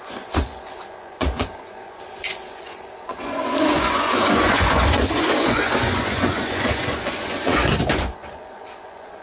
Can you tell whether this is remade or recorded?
remade